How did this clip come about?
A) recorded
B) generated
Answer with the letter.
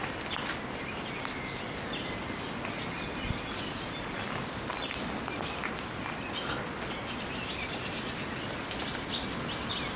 A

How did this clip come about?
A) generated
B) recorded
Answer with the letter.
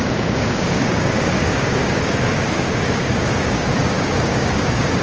A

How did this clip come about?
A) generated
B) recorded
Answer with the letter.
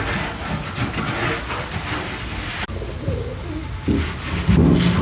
B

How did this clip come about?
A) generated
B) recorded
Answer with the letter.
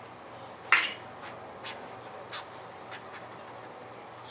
B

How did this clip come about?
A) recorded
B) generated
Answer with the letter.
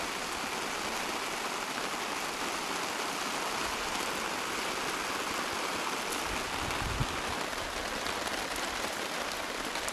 A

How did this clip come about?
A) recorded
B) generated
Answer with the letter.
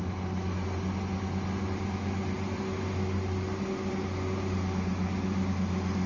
A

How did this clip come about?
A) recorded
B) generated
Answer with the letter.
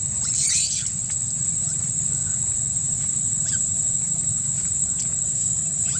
A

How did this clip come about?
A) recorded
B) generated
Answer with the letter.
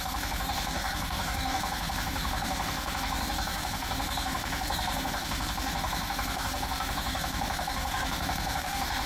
B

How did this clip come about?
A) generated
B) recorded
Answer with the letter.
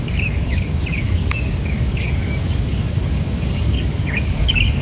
A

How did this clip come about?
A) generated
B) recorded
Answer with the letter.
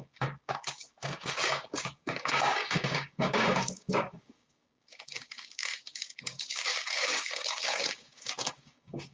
A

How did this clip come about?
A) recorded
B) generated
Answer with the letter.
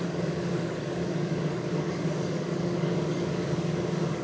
B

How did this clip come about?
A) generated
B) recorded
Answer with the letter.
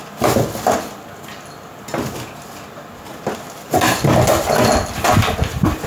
B